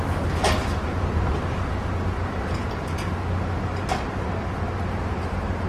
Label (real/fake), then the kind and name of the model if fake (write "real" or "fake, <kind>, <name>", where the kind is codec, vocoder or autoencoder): real